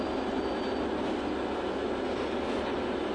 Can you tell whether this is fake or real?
real